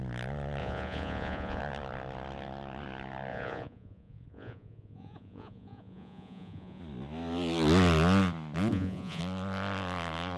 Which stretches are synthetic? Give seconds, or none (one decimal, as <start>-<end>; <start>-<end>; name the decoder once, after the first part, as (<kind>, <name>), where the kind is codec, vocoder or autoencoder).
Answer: 0.6-1.6 (vocoder, Vocos); 3.3-6.8; 8.7-9.2